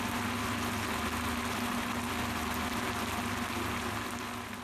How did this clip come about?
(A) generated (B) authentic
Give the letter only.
B